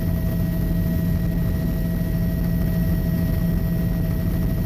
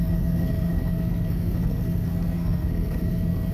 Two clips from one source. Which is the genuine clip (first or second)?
first